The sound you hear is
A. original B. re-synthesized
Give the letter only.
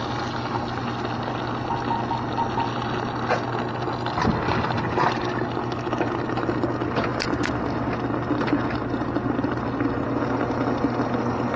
A